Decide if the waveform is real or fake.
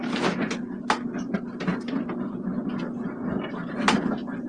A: real